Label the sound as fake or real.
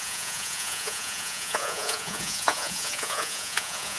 fake